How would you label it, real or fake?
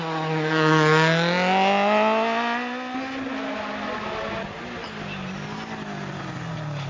real